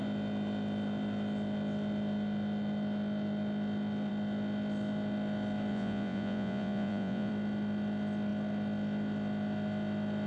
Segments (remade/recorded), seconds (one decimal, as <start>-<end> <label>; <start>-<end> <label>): 0.0-5.7 recorded; 5.7-7.3 remade; 7.3-10.3 recorded